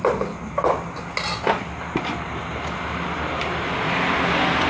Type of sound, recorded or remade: recorded